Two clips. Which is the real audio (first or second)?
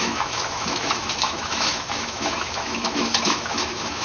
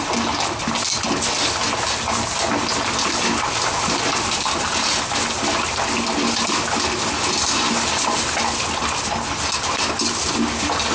second